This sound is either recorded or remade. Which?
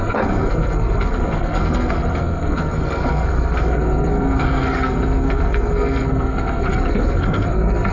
remade